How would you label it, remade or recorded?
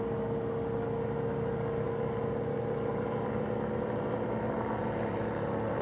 recorded